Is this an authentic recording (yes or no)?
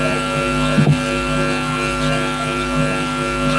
yes